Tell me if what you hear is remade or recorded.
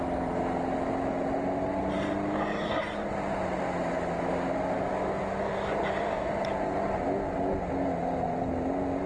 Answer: recorded